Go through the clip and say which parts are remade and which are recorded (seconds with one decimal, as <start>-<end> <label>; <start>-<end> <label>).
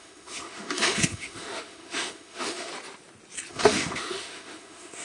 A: 0.0-2.7 remade; 2.7-3.5 recorded; 3.5-5.0 remade